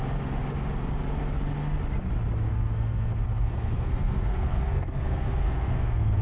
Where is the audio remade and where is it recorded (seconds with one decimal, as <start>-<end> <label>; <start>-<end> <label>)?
0.0-2.5 recorded; 2.5-6.2 remade